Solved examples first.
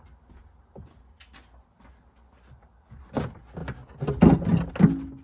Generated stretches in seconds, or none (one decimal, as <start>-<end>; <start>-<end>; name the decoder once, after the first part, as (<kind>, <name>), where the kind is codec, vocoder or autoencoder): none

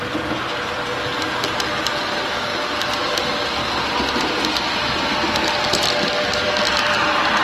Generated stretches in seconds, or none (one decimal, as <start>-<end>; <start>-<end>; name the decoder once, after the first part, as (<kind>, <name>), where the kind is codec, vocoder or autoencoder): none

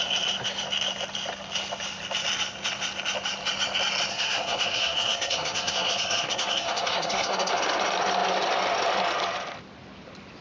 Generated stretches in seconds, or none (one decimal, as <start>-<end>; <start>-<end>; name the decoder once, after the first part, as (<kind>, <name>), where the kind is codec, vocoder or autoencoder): 4.1-7.5 (codec, SNAC)

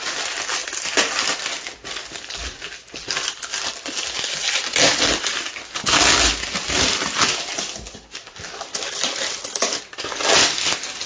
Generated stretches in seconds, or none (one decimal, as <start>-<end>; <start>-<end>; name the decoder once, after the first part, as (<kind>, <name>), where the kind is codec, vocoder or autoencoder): none

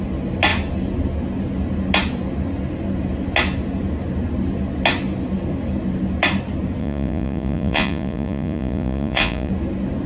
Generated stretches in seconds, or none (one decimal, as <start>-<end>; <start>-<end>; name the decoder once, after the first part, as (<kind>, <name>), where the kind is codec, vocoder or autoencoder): 6.8-9.5 (vocoder, Vocos)

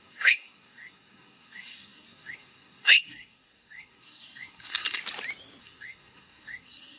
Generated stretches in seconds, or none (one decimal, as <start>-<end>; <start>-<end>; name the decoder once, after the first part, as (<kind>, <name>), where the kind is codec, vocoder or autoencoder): 0.0-5.0 (codec, SNAC); 5.6-7.0